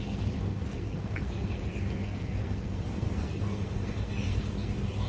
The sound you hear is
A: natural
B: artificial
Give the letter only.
B